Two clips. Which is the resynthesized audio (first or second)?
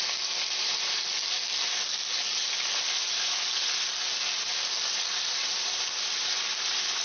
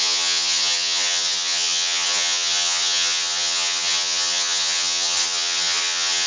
second